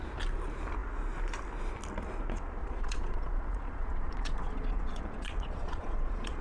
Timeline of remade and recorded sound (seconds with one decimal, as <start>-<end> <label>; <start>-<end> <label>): 0.0-2.6 recorded; 2.6-6.4 remade